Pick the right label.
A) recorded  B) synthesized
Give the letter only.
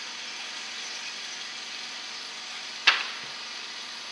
A